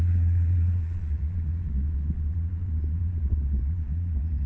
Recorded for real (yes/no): no